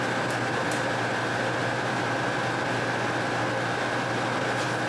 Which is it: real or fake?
real